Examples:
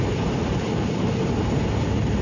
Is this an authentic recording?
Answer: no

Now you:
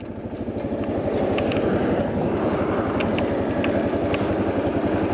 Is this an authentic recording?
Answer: yes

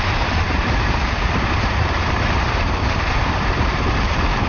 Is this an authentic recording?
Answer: no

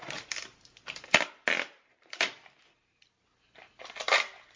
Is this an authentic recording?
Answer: yes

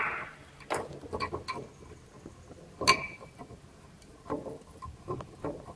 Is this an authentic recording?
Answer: yes